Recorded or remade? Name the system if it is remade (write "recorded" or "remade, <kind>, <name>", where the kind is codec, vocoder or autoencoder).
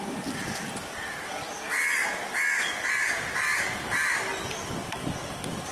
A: recorded